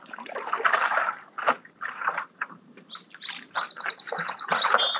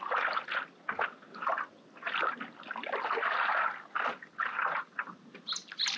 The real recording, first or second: second